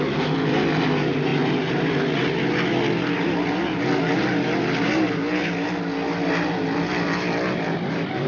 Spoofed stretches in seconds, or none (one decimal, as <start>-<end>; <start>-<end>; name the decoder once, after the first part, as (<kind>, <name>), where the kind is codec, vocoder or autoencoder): none